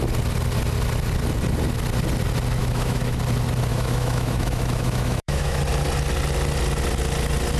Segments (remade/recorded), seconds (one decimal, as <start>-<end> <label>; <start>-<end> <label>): 0.0-2.6 recorded; 2.6-3.2 remade; 3.2-3.7 recorded; 3.7-5.6 remade; 5.6-7.6 recorded